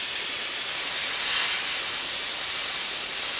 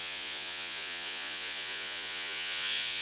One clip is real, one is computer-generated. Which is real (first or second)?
first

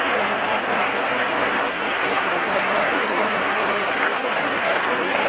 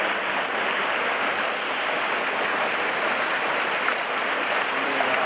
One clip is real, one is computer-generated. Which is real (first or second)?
second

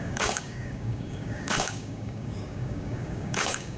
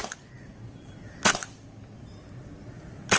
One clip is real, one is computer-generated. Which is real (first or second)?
second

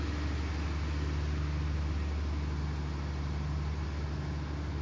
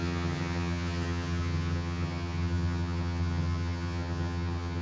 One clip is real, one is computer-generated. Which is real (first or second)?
first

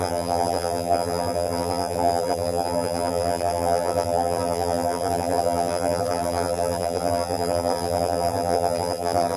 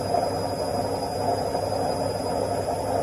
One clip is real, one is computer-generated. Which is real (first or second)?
second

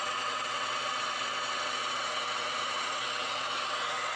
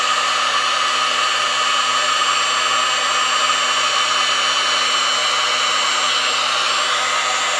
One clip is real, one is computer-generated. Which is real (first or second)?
second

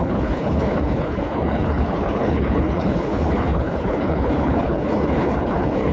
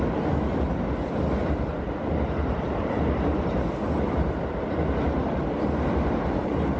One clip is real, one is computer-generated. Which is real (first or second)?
second